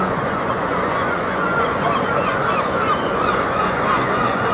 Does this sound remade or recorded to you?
remade